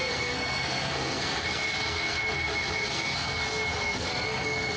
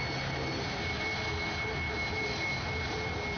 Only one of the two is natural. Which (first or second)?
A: second